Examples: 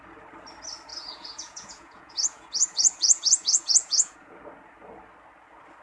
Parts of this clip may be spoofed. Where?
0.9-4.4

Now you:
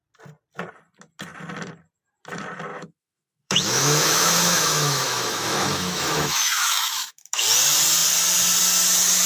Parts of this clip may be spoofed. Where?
2.7-7.4

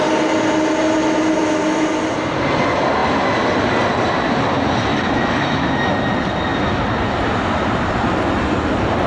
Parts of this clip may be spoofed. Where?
4.9-5.7

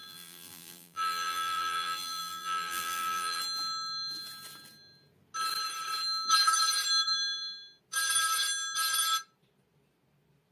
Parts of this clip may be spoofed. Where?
0.0-3.4

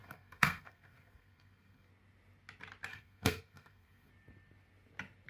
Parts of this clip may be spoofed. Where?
0.0-1.9; 2.9-4.1